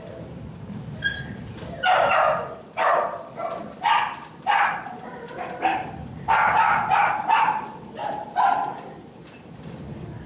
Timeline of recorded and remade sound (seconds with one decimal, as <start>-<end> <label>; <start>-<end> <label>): 0.0-10.3 recorded